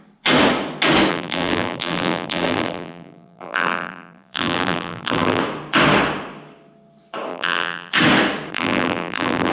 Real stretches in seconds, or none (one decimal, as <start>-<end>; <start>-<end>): 0.0-1.1; 5.4-7.3; 7.9-8.5